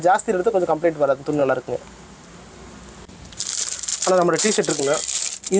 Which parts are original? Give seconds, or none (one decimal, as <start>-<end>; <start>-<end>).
0.0-5.6